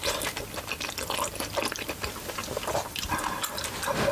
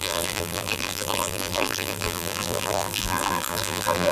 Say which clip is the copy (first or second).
second